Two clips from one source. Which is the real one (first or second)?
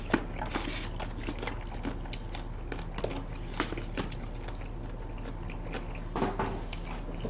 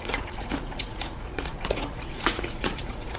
first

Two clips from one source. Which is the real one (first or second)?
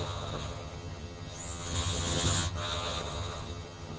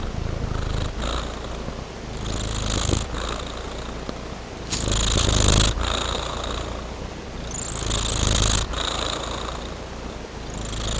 second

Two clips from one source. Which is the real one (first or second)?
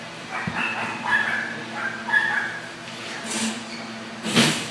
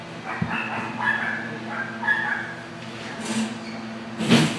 second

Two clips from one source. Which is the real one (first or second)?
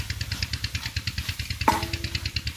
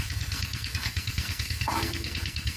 first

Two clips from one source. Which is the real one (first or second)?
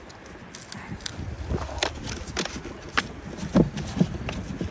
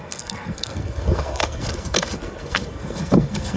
first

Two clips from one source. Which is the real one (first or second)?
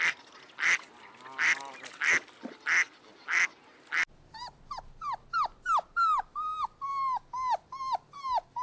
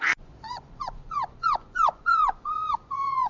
first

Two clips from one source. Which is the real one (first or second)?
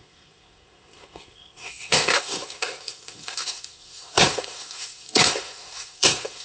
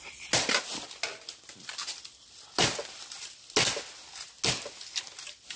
second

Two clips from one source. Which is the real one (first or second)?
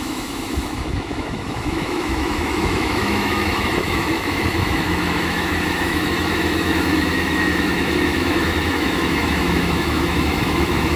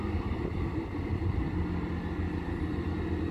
second